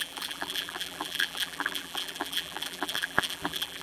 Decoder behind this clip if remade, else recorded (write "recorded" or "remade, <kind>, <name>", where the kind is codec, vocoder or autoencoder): remade, vocoder, BigVGAN v2